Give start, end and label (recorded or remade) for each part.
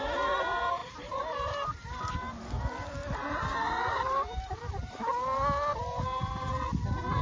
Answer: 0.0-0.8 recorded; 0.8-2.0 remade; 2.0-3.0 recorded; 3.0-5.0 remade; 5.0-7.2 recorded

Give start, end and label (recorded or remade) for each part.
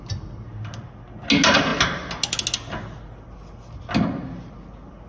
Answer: 0.0-5.1 recorded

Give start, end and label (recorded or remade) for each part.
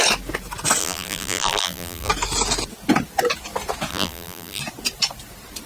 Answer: 0.0-0.8 recorded; 0.8-2.1 remade; 2.1-3.9 recorded; 3.9-4.6 remade; 4.6-5.7 recorded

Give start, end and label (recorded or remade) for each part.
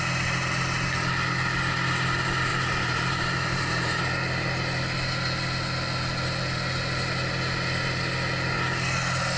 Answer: 0.0-2.5 recorded; 2.5-4.0 remade; 4.0-9.4 recorded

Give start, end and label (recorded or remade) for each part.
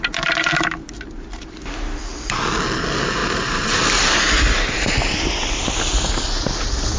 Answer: 0.0-3.2 recorded; 3.2-5.6 remade; 5.6-7.0 recorded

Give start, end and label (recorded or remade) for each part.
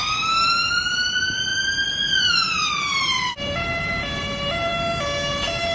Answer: 0.0-0.7 recorded; 0.7-1.5 remade; 1.5-2.3 recorded; 2.3-4.7 remade; 4.7-5.3 recorded; 5.3-5.7 remade